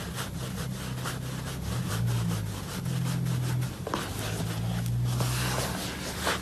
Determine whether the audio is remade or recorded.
recorded